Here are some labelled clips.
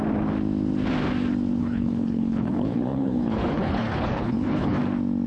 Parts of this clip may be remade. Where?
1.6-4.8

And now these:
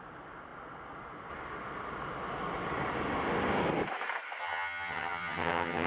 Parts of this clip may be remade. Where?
4.4-5.9

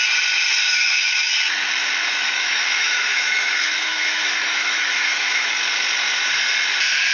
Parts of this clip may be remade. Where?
0.6-1.7; 2.1-5.5

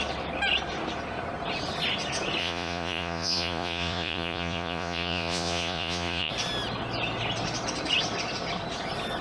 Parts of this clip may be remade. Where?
2.4-6.3

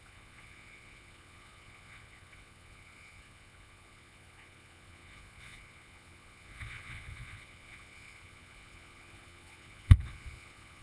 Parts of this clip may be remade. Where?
0.0-10.8

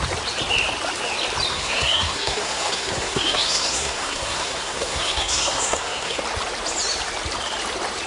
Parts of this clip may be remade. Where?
1.5-6.2

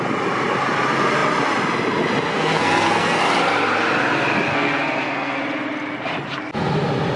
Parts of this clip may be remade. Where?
2.3-3.2; 4.5-5.4